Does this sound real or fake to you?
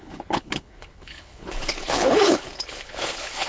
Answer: fake